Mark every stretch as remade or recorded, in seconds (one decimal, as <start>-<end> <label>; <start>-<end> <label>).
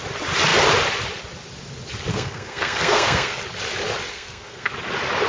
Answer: 0.0-2.1 recorded; 2.1-3.4 remade; 3.4-4.1 recorded; 4.1-4.7 remade; 4.7-5.3 recorded